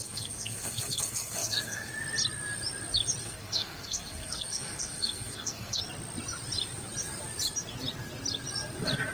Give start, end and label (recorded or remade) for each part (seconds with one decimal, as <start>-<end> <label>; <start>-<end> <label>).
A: 0.0-1.9 remade; 1.9-3.2 recorded; 3.2-5.8 remade; 5.8-9.1 recorded